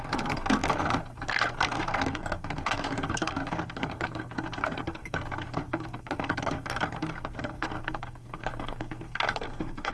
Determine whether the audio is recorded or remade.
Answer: remade